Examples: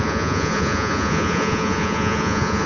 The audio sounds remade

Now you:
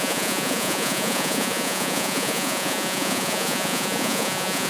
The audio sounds remade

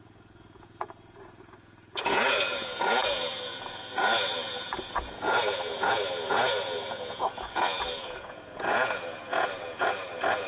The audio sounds remade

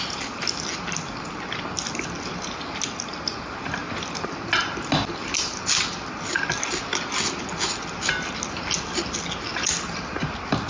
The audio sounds recorded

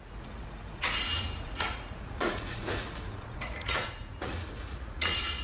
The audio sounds remade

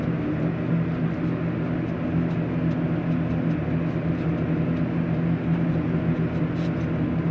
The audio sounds recorded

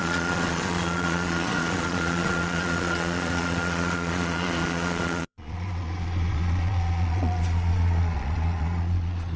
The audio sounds remade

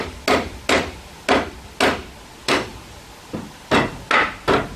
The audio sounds recorded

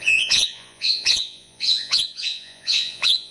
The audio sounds remade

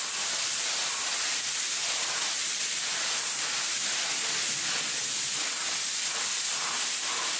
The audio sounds recorded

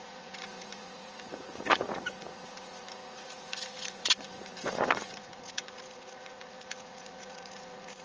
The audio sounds remade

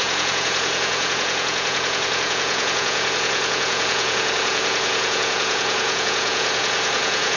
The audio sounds remade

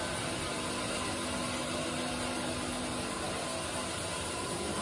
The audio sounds recorded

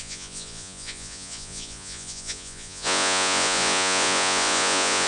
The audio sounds remade